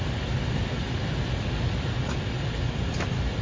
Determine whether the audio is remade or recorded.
recorded